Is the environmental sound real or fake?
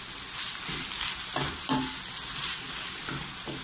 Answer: real